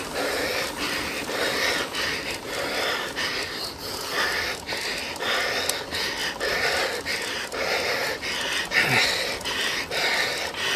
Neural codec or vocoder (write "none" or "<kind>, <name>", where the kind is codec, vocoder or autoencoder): none